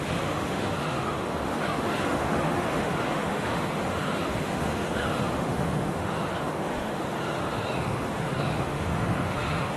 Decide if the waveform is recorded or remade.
remade